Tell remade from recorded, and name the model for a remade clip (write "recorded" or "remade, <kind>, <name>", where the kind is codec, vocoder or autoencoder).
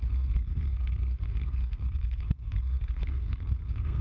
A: remade, codec, SNAC